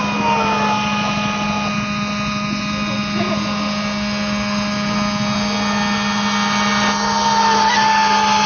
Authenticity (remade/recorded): recorded